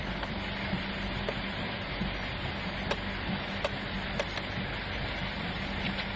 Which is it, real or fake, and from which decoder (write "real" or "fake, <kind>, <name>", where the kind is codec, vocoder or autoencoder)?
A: real